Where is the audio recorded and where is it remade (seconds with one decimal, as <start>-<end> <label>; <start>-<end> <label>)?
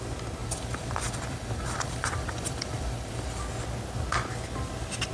0.0-0.4 recorded; 0.4-3.4 remade; 3.4-5.1 recorded